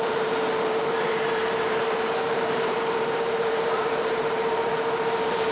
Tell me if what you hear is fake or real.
fake